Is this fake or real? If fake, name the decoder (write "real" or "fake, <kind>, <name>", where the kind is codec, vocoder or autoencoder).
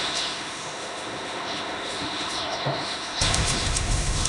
fake, autoencoder, DAC-VAE